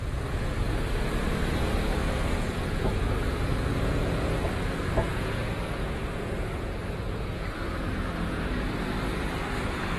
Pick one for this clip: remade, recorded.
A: remade